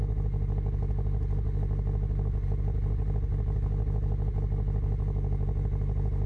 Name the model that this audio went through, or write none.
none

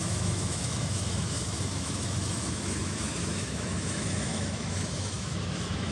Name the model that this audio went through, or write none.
autoencoder, DAC-VAE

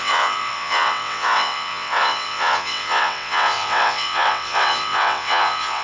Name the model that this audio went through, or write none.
vocoder, WaveNeXt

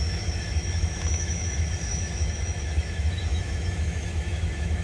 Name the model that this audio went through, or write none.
autoencoder, DAC-VAE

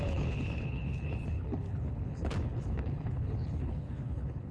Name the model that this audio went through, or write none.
codec, HILCodec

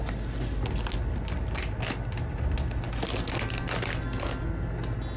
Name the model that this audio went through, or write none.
none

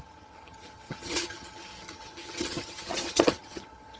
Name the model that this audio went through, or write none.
vocoder, HiFi-GAN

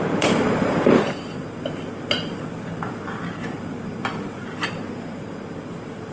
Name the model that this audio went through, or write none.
vocoder, BigVGAN v2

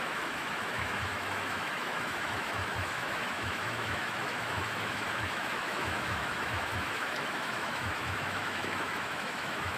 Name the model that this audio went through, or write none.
autoencoder, DAC-VAE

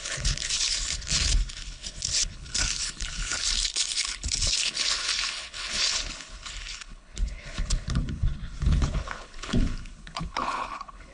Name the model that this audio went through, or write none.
codec, HILCodec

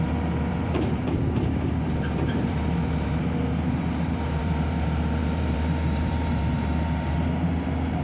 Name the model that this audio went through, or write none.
vocoder, BigVGAN v2